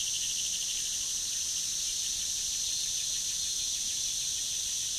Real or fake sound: real